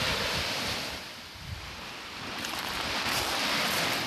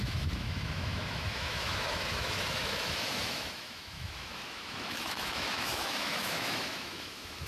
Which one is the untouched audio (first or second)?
first